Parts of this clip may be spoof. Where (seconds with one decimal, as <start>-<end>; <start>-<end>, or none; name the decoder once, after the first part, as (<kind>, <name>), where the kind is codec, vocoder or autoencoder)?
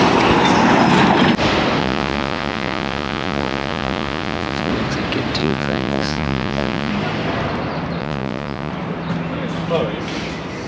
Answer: 1.8-4.7 (vocoder, Vocos); 5.4-6.9; 8.0-8.7